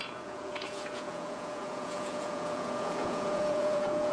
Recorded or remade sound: remade